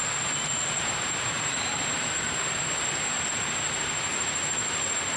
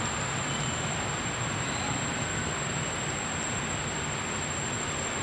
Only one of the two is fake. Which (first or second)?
first